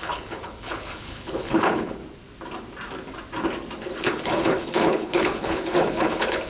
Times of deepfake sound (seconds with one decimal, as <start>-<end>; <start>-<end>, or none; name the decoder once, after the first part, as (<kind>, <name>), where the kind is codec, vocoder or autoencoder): 0.0-2.0 (codec, HILCodec); 4.0-6.5